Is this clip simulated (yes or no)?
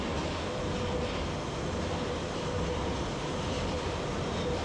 no